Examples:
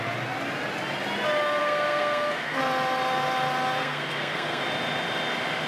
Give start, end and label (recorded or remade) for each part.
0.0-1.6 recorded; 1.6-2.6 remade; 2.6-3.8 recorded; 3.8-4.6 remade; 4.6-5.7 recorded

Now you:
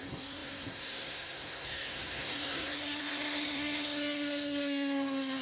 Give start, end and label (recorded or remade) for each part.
0.0-5.4 remade

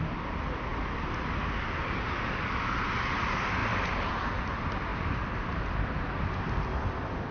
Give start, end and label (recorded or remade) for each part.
0.0-3.6 recorded; 3.6-4.1 remade; 4.1-4.9 recorded; 4.9-5.6 remade; 5.6-7.3 recorded

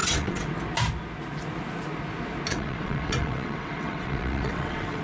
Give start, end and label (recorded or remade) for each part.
0.0-0.5 remade; 0.5-2.5 recorded; 2.5-5.0 remade

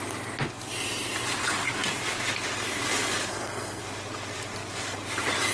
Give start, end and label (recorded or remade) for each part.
0.0-3.3 recorded; 3.3-3.8 remade; 3.8-5.5 recorded

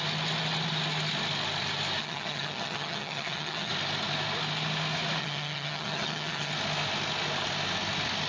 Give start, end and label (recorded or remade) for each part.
0.0-2.0 recorded; 2.0-3.7 remade; 3.7-5.2 recorded; 5.2-6.5 remade; 6.5-8.3 recorded